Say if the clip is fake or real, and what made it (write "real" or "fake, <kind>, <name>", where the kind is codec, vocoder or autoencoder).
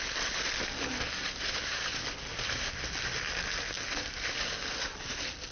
real